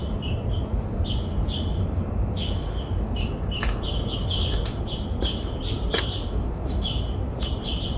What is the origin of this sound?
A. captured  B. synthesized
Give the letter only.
A